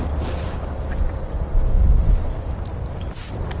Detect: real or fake real